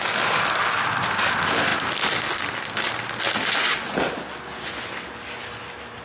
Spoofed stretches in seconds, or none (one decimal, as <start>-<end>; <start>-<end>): none